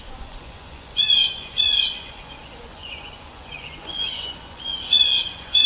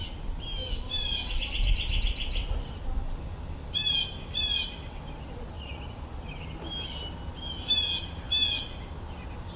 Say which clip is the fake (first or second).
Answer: first